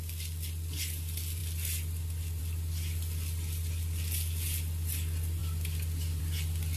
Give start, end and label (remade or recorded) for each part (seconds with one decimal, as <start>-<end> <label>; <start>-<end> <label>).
0.0-6.8 recorded